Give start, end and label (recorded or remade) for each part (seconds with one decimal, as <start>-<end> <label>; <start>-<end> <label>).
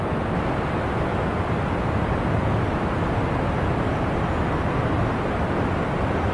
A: 0.0-1.1 recorded; 1.1-1.7 remade; 1.7-6.3 recorded